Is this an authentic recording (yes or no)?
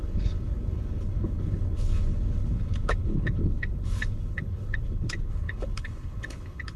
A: no